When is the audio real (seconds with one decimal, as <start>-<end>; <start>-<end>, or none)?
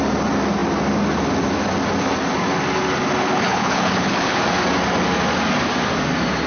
0.0-3.2; 4.4-6.5